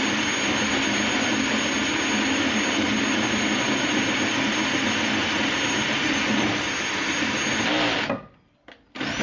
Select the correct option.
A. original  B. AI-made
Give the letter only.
A